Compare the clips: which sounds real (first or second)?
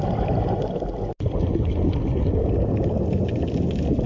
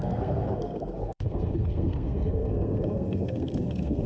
first